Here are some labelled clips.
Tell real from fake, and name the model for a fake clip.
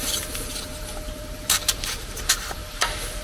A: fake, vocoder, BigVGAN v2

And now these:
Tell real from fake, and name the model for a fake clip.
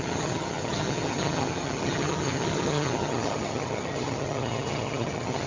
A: fake, vocoder, HiFi-GAN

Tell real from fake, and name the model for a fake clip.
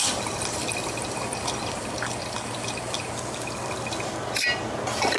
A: real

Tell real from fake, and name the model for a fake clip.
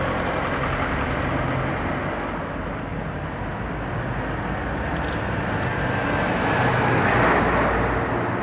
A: real